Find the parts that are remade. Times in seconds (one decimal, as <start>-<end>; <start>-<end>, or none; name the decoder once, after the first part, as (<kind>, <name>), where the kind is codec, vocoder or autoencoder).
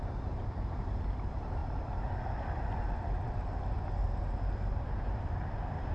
0.0-1.6 (vocoder, BigVGAN v2); 5.0-5.9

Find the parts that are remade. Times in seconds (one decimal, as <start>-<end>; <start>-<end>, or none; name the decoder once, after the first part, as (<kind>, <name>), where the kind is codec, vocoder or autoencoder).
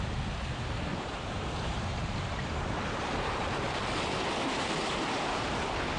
0.9-3.6 (vocoder, BigVGAN v2)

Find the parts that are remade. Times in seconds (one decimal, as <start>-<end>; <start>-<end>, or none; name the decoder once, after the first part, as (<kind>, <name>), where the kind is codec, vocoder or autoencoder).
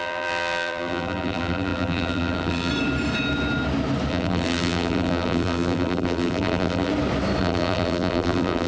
0.0-2.7 (vocoder, BigVGAN v2); 4.1-6.9; 7.4-8.7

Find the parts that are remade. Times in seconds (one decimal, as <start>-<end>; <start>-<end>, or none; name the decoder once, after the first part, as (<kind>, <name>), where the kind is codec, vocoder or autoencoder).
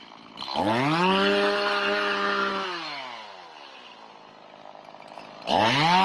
none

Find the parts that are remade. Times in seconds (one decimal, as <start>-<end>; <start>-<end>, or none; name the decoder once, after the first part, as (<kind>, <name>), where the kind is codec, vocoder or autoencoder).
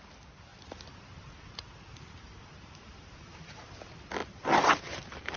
0.5-3.7 (vocoder, BigVGAN v2)